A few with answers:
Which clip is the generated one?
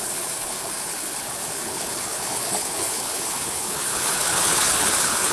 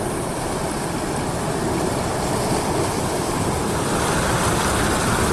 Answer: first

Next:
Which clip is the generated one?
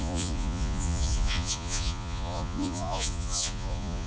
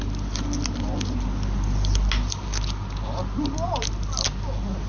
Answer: first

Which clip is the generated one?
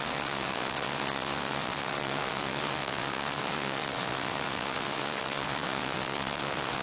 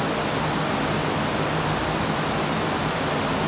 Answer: first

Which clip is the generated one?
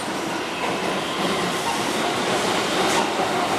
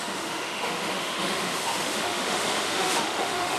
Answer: second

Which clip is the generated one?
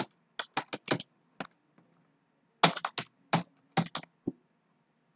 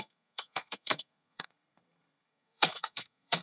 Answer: second